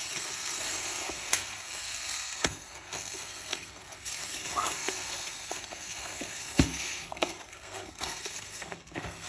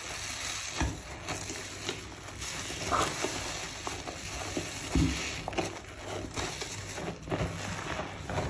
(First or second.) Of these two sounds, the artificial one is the first